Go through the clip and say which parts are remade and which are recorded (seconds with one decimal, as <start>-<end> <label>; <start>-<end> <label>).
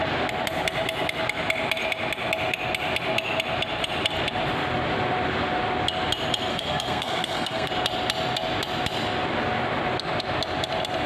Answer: 0.0-6.5 recorded; 6.5-7.7 remade; 7.7-11.1 recorded